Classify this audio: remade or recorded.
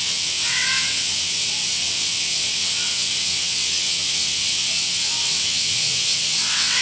remade